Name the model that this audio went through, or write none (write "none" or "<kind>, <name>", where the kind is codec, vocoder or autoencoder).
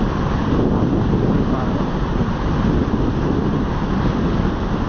none